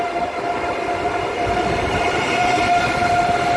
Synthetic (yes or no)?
no